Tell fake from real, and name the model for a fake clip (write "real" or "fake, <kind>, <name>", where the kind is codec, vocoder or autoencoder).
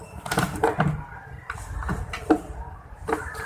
fake, vocoder, BigVGAN v2